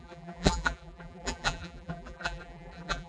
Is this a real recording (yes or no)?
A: no